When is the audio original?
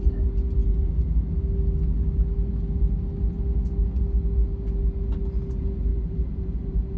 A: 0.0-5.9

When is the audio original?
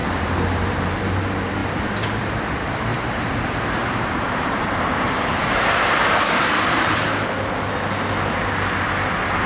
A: 1.0-2.9; 7.1-9.5